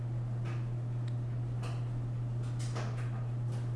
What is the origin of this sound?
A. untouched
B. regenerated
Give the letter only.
A